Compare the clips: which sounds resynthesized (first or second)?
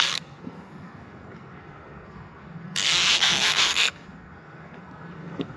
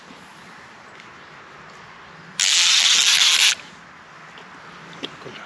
first